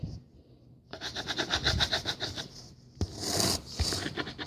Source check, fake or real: real